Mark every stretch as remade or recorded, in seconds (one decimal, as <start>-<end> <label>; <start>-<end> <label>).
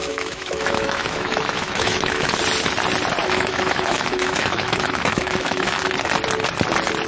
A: 0.0-2.3 remade; 2.3-3.2 recorded; 3.2-5.9 remade; 5.9-7.1 recorded